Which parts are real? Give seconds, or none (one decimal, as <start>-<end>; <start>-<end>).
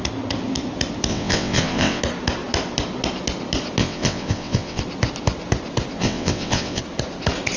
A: 0.0-1.1; 2.0-3.8; 4.8-6.0; 6.8-7.6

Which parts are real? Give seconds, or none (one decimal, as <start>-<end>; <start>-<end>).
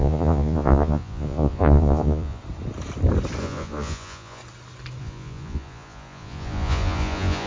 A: 2.4-3.4; 4.4-5.0